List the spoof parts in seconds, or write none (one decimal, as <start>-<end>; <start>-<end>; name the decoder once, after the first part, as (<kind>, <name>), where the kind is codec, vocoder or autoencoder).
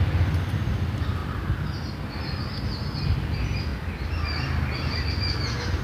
none